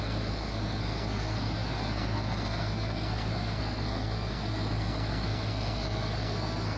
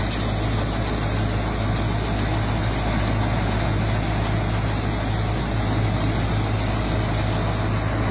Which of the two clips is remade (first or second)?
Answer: first